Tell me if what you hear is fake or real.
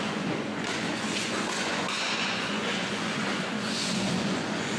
fake